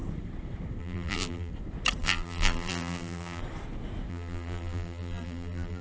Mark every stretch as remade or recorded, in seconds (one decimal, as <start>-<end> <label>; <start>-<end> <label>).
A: 0.0-0.8 recorded; 0.8-1.5 remade; 1.5-2.0 recorded; 2.0-3.4 remade; 3.4-4.1 recorded; 4.1-5.8 remade